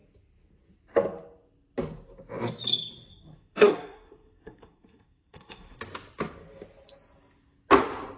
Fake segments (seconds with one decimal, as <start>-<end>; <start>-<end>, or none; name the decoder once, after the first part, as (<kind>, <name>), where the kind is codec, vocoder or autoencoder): 3.1-5.8 (codec, SNAC)